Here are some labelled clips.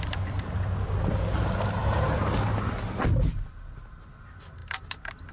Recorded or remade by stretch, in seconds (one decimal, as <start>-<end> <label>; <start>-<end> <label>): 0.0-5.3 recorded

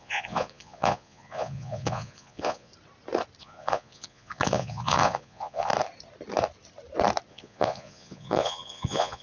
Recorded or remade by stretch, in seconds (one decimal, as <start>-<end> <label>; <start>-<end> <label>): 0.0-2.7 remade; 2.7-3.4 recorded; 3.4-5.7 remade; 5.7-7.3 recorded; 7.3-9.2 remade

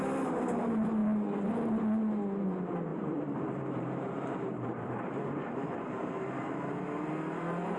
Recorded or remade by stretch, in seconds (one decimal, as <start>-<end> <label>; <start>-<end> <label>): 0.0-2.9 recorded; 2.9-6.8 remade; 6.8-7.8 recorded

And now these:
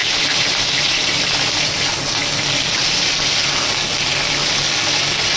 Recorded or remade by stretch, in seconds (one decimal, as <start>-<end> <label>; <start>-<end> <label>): 0.0-1.7 remade; 1.7-5.4 recorded

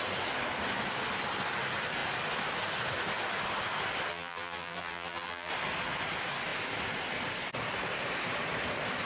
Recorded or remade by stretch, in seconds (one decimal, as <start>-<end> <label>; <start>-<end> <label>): 0.0-4.1 recorded; 4.1-5.5 remade; 5.5-9.1 recorded